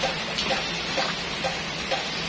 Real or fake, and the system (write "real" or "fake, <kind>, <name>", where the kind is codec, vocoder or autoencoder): real